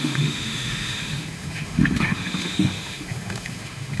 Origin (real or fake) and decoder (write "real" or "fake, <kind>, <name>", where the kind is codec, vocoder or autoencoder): fake, autoencoder, DAC-VAE